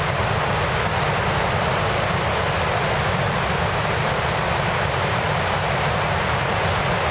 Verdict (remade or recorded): recorded